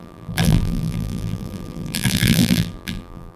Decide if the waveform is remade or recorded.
remade